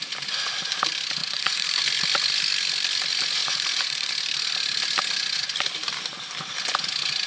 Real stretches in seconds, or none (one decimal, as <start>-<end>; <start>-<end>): 0.0-1.2; 1.8-3.4; 4.1-7.3